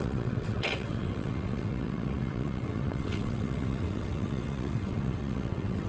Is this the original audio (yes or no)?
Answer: no